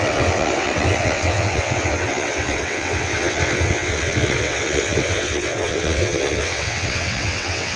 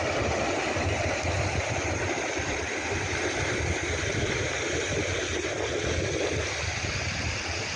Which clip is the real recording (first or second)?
second